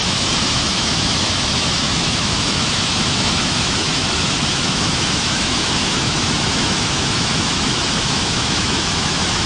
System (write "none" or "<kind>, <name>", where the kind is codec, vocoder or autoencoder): autoencoder, DAC-VAE